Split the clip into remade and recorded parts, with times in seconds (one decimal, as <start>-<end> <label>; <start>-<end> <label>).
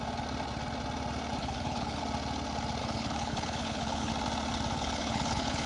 0.0-1.4 recorded; 1.4-2.0 remade; 2.0-2.8 recorded; 2.8-4.1 remade; 4.1-4.7 recorded; 4.7-5.7 remade